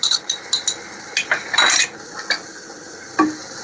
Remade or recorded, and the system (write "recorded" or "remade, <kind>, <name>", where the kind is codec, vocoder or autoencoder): recorded